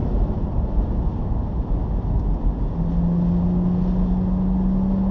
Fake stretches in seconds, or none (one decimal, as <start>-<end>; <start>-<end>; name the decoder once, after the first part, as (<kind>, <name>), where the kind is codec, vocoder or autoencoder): 0.0-0.6 (vocoder, BigVGAN v2)